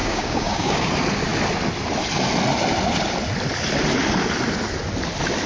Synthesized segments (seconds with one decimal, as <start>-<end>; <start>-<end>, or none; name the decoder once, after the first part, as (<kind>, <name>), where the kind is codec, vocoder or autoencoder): 0.0-0.9 (codec, DAC)